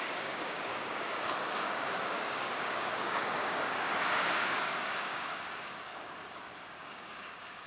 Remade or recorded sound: remade